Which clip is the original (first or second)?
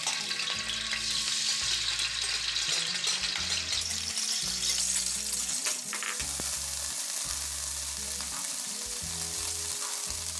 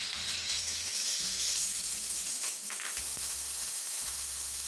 first